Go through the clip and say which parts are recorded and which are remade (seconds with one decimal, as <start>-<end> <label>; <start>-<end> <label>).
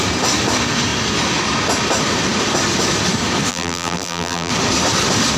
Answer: 0.0-3.5 recorded; 3.5-4.5 remade; 4.5-5.4 recorded